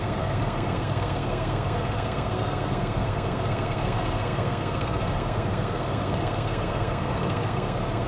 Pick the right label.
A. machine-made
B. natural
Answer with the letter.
A